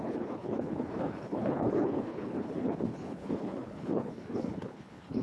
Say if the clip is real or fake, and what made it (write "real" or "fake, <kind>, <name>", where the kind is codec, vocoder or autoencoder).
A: fake, codec, HILCodec